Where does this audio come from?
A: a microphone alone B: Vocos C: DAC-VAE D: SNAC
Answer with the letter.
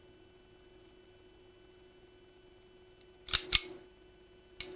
A